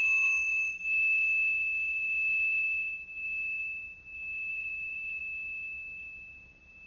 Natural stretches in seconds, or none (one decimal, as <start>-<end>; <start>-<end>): 0.0-4.5; 5.2-6.9